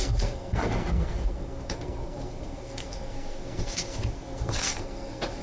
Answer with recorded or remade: remade